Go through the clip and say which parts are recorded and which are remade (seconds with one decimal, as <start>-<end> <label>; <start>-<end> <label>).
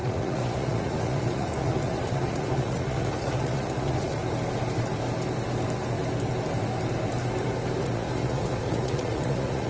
0.0-4.2 remade; 4.2-7.8 recorded; 7.8-9.7 remade